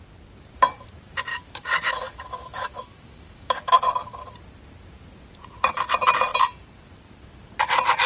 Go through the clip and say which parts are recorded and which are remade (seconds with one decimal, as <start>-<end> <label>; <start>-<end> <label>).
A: 0.0-1.3 recorded; 1.3-3.8 remade; 3.8-8.1 recorded